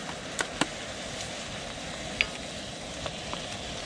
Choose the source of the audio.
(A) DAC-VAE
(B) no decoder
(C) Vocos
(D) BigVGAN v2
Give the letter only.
B